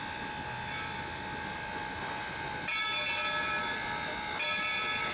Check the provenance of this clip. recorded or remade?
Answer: recorded